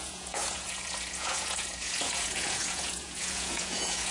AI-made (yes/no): yes